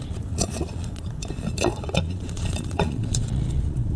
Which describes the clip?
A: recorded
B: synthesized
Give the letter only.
B